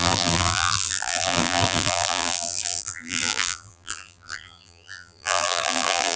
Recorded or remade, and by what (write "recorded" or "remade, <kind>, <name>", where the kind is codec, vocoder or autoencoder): remade, vocoder, BigVGAN v2